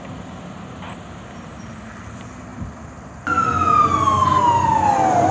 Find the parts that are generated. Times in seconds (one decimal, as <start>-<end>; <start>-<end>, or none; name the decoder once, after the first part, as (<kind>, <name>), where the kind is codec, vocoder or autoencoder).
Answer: none